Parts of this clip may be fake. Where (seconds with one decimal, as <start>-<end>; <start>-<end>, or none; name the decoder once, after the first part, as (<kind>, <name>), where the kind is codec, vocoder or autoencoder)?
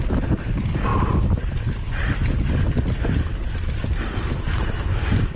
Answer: none